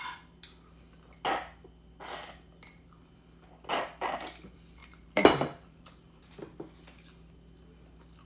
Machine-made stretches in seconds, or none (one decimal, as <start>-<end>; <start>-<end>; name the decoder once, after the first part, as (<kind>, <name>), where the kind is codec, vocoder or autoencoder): 4.8-6.2 (vocoder, BigVGAN v2)